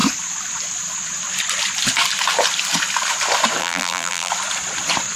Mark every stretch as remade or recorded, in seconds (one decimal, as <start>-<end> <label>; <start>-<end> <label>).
0.0-3.6 recorded; 3.6-4.3 remade; 4.3-5.2 recorded